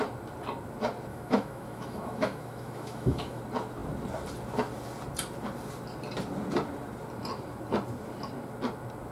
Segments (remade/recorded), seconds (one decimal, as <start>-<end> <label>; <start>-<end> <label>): 0.0-1.1 recorded; 1.1-3.4 remade; 3.4-9.1 recorded